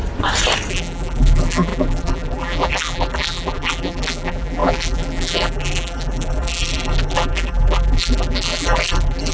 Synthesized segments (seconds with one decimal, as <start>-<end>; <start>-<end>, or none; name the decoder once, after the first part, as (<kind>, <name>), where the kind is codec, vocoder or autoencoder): 0.7-9.3 (vocoder, BigVGAN v2)